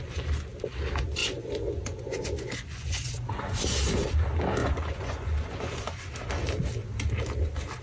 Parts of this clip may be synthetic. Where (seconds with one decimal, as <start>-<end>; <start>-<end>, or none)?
1.2-3.6; 4.6-6.1